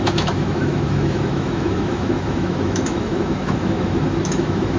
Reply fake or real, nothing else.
fake